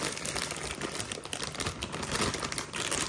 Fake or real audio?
real